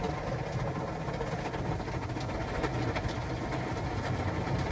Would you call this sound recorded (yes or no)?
yes